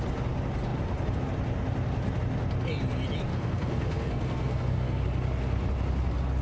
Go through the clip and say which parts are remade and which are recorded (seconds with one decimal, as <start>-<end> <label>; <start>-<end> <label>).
0.0-3.3 recorded; 3.3-5.0 remade; 5.0-6.4 recorded